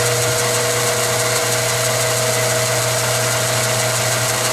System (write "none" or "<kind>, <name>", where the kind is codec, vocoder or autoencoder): none